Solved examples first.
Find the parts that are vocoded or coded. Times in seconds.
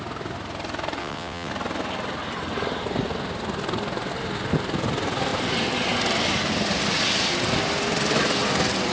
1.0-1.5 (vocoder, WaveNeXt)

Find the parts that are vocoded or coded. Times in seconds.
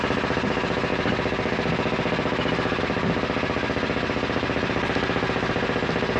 none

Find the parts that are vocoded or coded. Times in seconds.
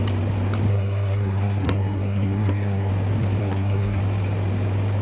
0.7-2.9 (codec, SNAC); 3.4-4.0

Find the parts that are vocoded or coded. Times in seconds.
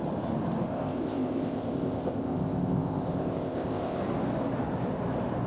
0.7-4.0 (codec, ZipCodec)